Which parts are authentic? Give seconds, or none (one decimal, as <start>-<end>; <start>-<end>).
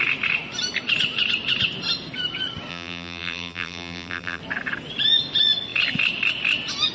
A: 0.0-2.7; 4.4-6.9